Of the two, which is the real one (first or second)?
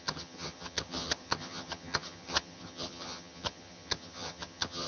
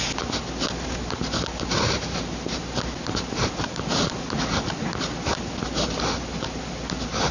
second